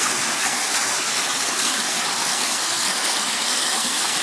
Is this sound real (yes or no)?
no